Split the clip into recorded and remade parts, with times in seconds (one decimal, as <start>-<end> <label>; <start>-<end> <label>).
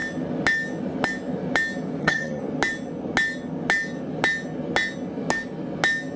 0.0-2.0 recorded; 2.0-2.4 remade; 2.4-6.2 recorded